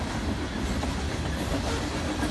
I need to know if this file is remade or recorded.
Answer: recorded